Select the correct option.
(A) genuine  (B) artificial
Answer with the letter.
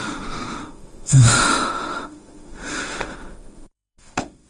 B